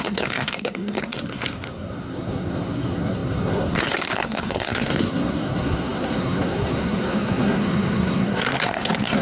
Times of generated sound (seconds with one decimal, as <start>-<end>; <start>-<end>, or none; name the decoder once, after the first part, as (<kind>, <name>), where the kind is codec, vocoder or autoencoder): 0.0-9.2 (codec, SNAC)